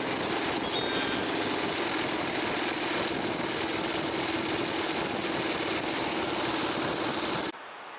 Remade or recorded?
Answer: recorded